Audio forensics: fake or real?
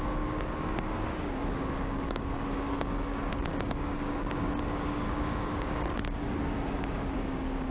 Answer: fake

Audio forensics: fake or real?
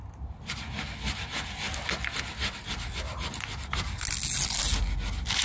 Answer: real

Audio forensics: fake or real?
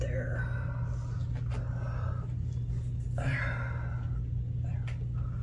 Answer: real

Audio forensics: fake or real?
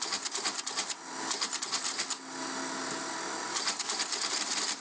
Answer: real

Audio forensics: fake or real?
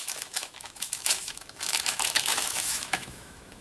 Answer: fake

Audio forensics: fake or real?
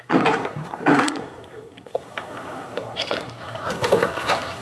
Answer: fake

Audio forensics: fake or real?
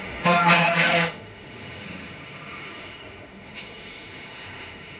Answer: fake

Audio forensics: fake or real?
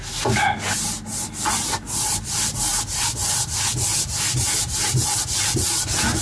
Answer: real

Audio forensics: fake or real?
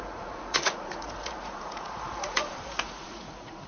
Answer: fake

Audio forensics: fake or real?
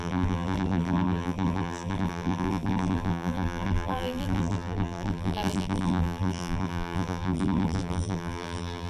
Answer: fake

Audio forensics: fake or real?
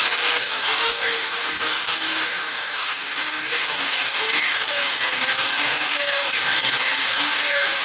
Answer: fake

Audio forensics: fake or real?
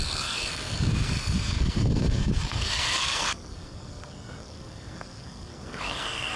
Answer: fake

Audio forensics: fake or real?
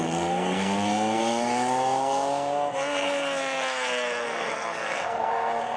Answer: fake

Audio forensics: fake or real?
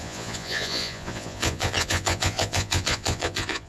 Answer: fake